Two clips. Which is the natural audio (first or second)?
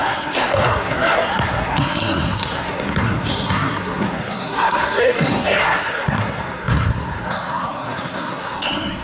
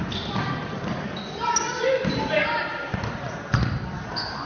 second